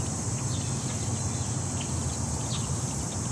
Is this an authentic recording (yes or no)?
no